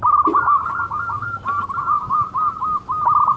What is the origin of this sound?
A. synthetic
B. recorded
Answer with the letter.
B